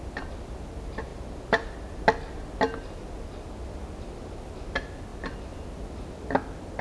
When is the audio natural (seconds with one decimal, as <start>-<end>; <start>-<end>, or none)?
0.0-6.8